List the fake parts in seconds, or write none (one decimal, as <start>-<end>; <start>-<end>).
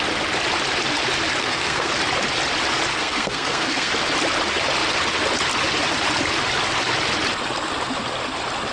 1.4-1.9; 2.9-3.9